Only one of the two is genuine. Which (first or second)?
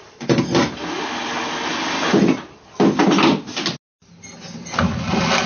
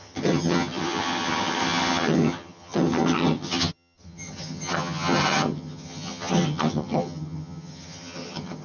first